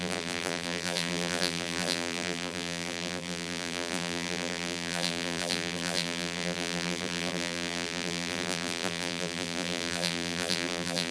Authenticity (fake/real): fake